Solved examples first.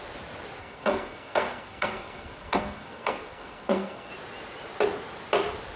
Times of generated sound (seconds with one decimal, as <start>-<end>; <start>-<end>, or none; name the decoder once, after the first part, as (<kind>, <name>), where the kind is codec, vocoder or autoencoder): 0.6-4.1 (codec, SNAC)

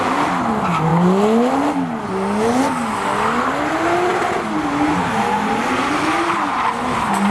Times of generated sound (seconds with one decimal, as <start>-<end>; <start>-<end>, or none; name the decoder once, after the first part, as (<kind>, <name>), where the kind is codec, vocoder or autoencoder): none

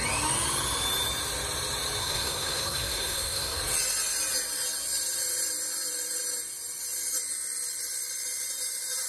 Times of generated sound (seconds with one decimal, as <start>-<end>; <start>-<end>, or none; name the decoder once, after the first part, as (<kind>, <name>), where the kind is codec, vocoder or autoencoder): 2.0-3.6 (codec, SNAC)

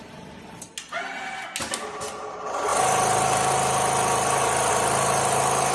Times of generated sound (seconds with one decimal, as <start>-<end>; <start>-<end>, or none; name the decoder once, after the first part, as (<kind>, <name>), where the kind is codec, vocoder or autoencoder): none